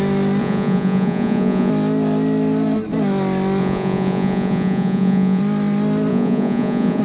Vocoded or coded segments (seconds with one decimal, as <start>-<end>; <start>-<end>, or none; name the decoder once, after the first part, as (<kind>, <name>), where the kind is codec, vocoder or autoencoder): 0.4-1.7 (vocoder, Vocos); 3.6-5.4; 6.1-7.0